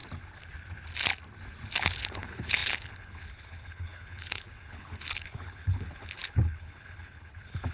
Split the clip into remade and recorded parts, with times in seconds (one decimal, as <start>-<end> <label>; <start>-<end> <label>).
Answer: 0.0-1.8 recorded; 1.8-7.7 remade